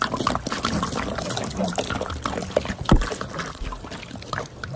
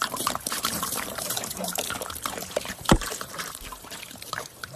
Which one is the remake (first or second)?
second